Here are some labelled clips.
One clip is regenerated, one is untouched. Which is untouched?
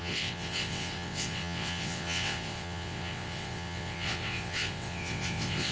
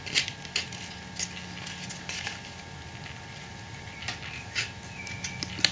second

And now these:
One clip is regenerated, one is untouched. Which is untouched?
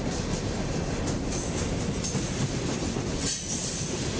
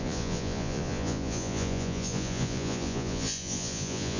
first